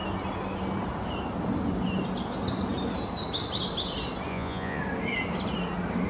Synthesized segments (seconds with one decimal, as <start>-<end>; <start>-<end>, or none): 4.3-4.8